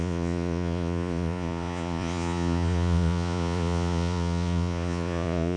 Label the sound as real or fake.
fake